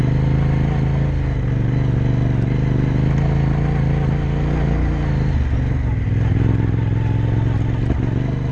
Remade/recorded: recorded